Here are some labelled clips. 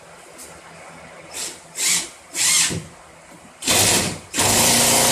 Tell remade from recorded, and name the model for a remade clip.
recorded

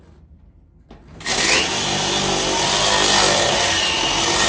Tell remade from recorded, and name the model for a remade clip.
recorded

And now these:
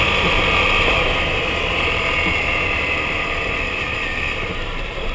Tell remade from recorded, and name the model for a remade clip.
recorded